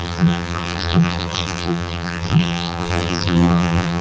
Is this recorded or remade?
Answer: remade